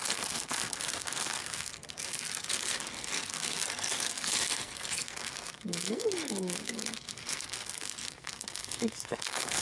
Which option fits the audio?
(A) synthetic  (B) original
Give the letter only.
A